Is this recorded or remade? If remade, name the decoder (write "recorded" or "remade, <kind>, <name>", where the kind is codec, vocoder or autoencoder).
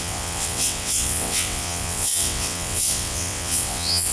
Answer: remade, vocoder, WaveNeXt